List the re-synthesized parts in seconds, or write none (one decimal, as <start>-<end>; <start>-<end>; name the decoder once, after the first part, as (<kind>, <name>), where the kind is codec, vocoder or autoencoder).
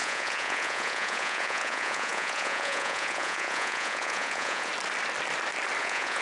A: 0.0-4.7 (vocoder, Vocos); 5.8-6.2